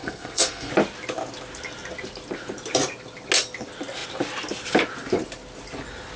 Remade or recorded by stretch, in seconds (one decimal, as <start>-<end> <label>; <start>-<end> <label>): 0.0-0.7 remade; 0.7-6.2 recorded

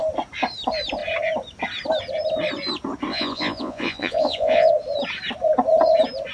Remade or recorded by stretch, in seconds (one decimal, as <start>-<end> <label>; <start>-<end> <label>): 0.0-3.1 recorded; 3.1-4.7 remade; 4.7-6.3 recorded

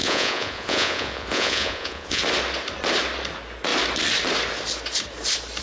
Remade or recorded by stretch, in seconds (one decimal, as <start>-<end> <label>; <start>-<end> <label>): 0.0-2.2 remade; 2.2-5.6 recorded

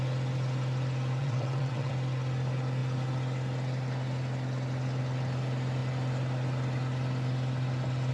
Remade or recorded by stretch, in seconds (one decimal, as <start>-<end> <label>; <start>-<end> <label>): 0.0-1.2 recorded; 1.2-1.9 remade; 1.9-8.1 recorded

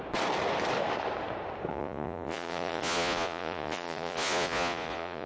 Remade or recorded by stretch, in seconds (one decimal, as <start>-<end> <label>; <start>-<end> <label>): 0.0-1.7 recorded; 1.7-5.3 remade

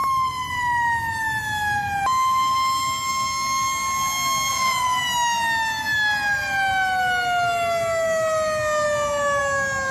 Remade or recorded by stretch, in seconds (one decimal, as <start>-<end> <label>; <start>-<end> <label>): 0.0-4.5 recorded; 4.5-5.0 remade; 5.0-9.9 recorded

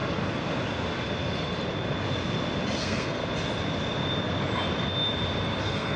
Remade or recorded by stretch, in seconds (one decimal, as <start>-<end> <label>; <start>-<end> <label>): 0.0-2.8 recorded; 2.8-3.2 remade; 3.2-5.6 recorded; 5.6-6.0 remade

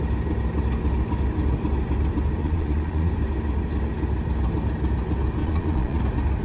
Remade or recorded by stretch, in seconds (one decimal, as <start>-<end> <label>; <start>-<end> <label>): 0.0-2.4 recorded; 2.4-3.1 remade; 3.1-5.4 recorded; 5.4-6.0 remade; 6.0-6.4 recorded